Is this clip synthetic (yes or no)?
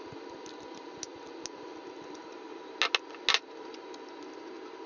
no